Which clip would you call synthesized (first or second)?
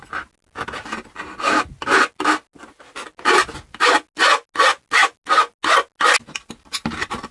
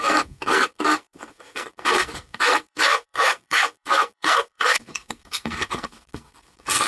second